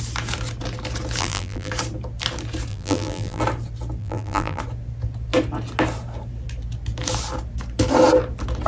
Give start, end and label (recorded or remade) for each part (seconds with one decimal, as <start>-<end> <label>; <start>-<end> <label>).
0.0-1.2 recorded; 1.2-1.7 remade; 1.7-2.7 recorded; 2.7-3.4 remade; 3.4-4.0 recorded; 4.0-4.6 remade; 4.6-8.7 recorded